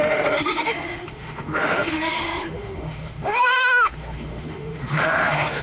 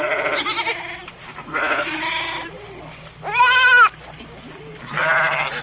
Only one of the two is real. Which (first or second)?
second